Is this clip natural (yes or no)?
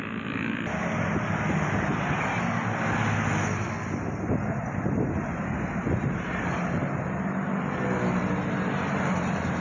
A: yes